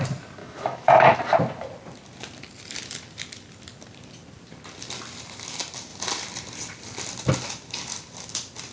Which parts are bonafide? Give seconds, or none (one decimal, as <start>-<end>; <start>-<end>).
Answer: 0.0-0.4; 1.2-8.7